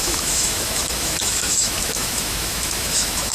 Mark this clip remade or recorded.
remade